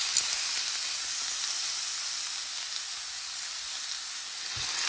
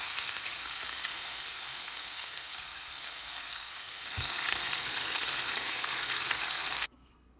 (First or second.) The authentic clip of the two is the first